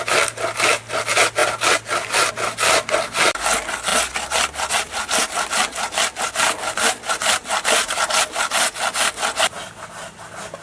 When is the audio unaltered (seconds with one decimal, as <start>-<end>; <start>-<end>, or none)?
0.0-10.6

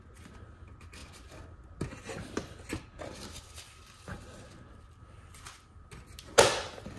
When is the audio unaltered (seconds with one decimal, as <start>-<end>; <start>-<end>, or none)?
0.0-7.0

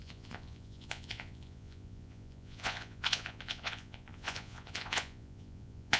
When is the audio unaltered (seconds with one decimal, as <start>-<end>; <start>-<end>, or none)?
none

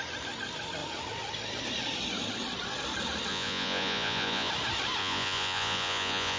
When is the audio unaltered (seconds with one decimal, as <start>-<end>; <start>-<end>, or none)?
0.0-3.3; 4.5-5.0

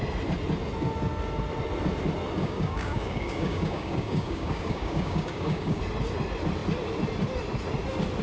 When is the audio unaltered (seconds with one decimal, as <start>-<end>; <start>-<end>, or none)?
0.0-2.4; 5.8-8.2

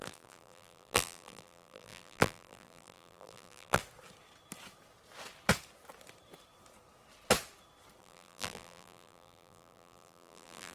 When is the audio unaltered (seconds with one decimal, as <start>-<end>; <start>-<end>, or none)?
3.8-8.0

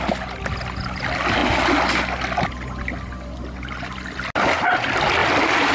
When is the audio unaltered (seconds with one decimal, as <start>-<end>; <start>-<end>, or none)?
0.0-5.7

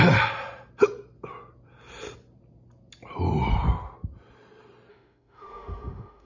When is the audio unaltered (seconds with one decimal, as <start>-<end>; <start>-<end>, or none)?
0.0-4.9